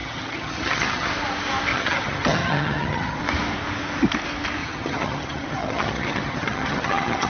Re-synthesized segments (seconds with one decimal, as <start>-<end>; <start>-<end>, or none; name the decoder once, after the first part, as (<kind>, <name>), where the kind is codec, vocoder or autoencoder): 0.0-1.1 (vocoder, HiFi-GAN); 1.7-3.2; 4.6-7.3